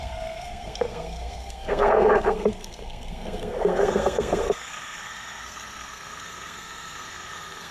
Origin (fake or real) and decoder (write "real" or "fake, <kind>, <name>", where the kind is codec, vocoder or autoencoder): fake, codec, SNAC